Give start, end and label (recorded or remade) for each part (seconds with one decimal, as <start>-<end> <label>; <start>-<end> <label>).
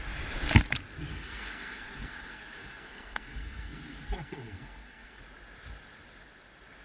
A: 0.0-1.1 recorded; 1.1-5.2 remade; 5.2-6.8 recorded